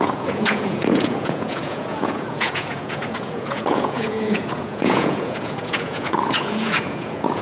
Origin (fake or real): fake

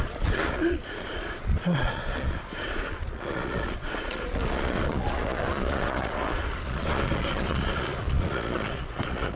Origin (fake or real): fake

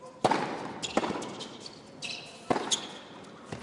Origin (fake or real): real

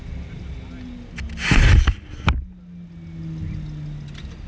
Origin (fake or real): real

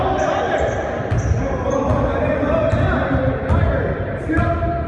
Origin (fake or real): real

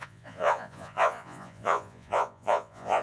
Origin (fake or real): fake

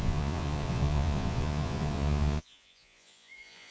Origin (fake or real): fake